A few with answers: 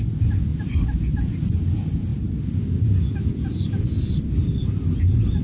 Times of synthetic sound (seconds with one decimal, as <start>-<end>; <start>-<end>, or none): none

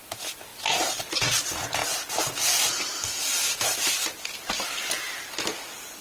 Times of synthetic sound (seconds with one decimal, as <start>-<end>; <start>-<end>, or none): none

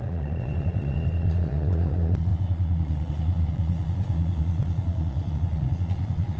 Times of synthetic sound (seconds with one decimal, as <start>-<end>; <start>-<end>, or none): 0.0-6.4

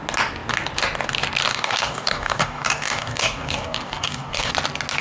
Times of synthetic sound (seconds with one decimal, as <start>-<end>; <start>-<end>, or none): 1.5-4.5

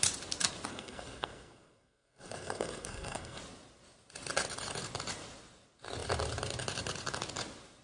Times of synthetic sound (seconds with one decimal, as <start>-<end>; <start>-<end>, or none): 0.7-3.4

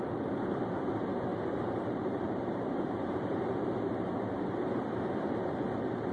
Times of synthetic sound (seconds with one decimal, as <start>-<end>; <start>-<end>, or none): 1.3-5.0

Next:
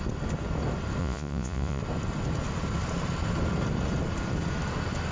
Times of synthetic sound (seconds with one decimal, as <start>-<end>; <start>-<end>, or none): 1.0-1.8